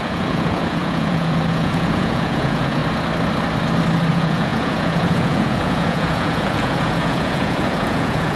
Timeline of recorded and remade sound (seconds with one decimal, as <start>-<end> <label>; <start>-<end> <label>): 0.0-2.8 remade; 2.8-4.1 recorded; 4.1-8.4 remade